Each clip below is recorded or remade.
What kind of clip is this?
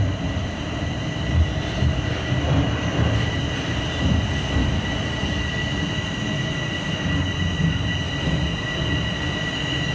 recorded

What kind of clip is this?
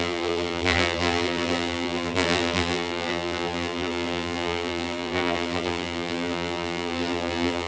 remade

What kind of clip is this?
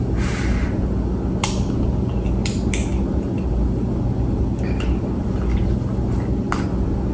recorded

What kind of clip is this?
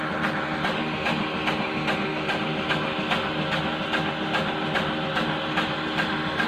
recorded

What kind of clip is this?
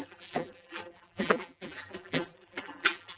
remade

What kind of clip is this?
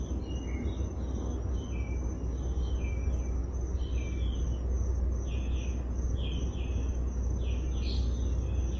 recorded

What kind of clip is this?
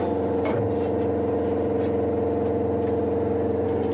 recorded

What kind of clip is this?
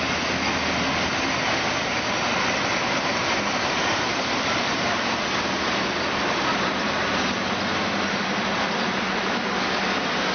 recorded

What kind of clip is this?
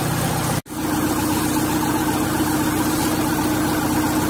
recorded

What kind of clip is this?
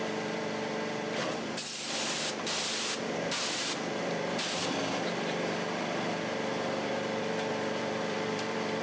remade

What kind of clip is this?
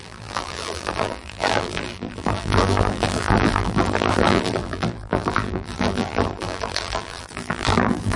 remade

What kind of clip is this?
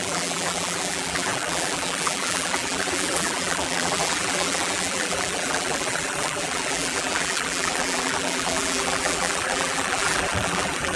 remade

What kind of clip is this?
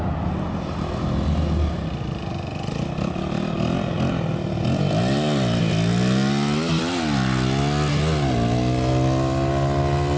recorded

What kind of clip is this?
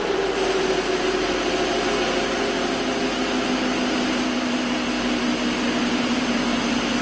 recorded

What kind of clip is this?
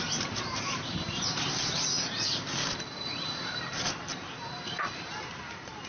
remade